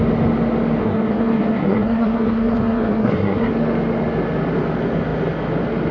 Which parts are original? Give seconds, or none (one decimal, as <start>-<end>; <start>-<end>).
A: 0.0-0.8; 3.5-5.9